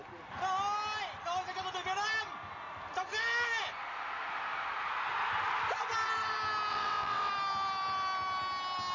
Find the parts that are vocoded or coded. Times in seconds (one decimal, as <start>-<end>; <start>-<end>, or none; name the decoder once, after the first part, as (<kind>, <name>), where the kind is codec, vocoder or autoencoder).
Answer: 6.7-7.3 (vocoder, WaveNeXt)